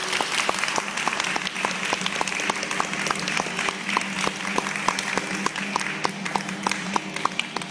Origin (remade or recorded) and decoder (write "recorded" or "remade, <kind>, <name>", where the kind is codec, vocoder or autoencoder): recorded